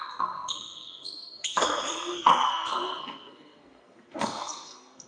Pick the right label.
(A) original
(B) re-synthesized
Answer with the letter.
B